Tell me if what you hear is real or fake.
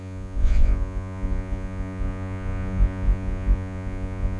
fake